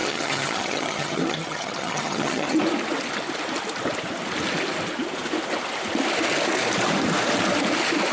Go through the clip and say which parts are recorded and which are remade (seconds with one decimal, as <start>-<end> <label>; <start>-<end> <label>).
0.0-2.6 remade; 2.6-8.1 recorded